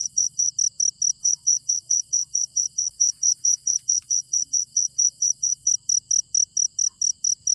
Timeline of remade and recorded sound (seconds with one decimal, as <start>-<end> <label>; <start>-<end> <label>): 0.0-0.5 remade; 0.5-1.2 recorded; 1.2-5.7 remade; 5.7-7.5 recorded